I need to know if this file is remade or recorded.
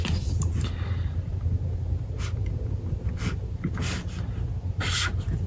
recorded